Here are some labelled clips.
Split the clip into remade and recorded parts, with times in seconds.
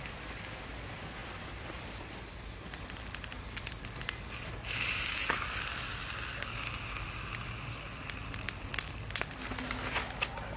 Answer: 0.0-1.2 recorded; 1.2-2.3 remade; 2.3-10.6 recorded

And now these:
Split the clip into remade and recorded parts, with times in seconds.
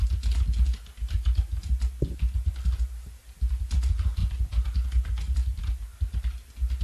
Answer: 0.0-4.2 recorded; 4.2-5.6 remade; 5.6-6.8 recorded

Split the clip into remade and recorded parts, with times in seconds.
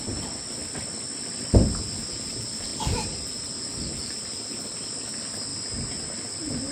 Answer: 0.0-0.6 remade; 0.6-2.1 recorded; 2.1-5.5 remade; 5.5-6.2 recorded; 6.2-6.7 remade